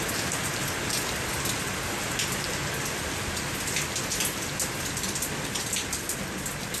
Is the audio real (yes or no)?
yes